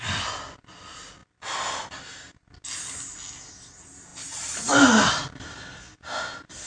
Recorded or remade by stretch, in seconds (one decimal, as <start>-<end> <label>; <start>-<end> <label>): 0.0-6.7 recorded